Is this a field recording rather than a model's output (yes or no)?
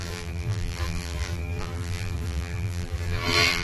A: no